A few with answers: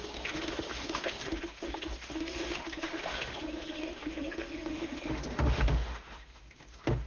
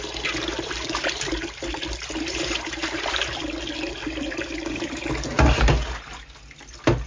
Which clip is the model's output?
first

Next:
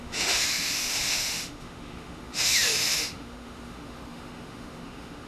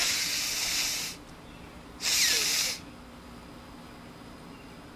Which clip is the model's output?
first